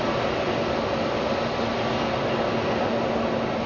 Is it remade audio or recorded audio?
recorded